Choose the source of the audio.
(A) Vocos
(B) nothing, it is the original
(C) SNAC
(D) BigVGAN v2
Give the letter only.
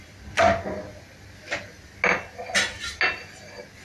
B